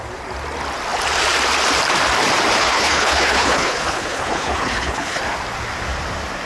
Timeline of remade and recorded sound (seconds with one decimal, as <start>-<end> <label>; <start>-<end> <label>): 0.0-2.6 recorded; 2.6-5.2 remade; 5.2-6.5 recorded